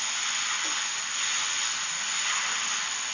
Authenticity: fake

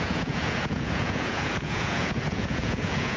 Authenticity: fake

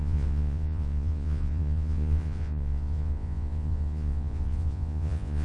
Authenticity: fake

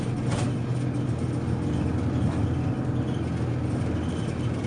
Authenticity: real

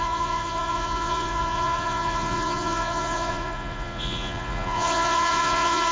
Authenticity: fake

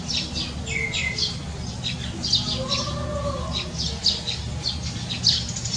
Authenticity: real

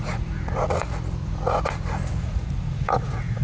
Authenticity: fake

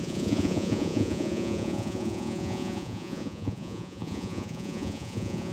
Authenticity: fake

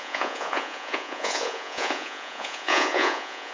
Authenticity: fake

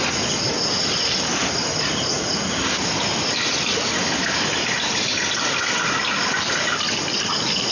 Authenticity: real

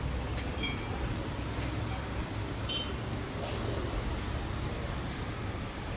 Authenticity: real